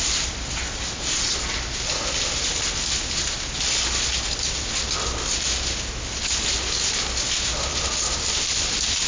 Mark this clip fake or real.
real